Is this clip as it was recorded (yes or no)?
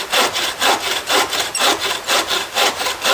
yes